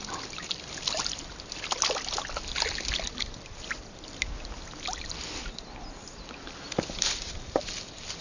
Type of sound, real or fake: real